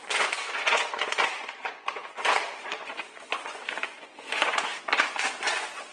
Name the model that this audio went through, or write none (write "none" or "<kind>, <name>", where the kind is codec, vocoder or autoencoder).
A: vocoder, Vocos